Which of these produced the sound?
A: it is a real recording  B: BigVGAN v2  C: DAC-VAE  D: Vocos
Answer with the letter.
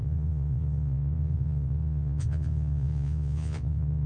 D